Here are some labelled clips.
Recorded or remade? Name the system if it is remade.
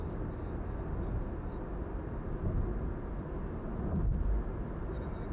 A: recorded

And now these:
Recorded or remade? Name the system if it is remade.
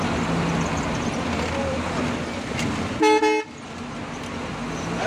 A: recorded